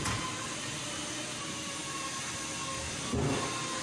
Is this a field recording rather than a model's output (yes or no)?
yes